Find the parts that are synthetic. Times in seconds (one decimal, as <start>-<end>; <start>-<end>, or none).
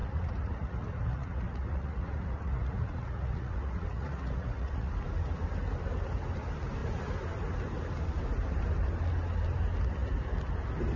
0.0-4.9